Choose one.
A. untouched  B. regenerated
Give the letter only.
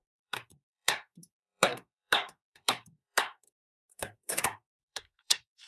B